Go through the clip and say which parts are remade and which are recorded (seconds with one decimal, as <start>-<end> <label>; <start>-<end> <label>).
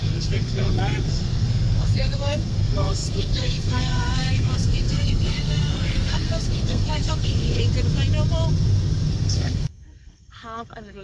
0.0-7.6 remade; 7.6-9.1 recorded; 9.1-11.0 remade